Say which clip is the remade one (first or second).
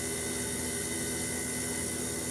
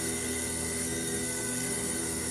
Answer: second